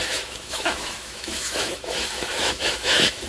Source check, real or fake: fake